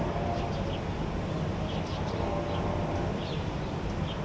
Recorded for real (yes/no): yes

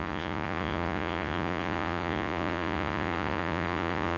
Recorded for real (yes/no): no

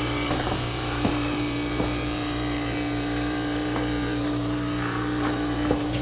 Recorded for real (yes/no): no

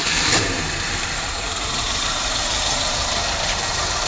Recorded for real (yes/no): no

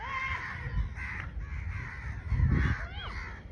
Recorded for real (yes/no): yes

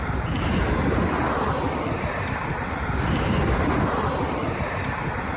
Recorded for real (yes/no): yes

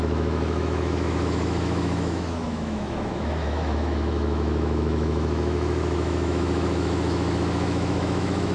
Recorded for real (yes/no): no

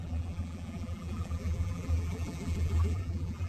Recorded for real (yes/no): no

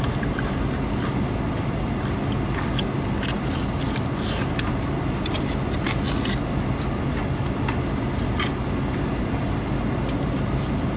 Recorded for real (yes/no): yes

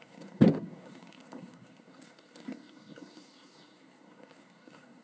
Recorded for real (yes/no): no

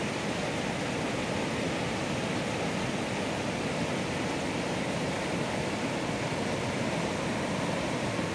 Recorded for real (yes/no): yes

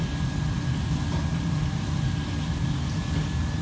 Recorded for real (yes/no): yes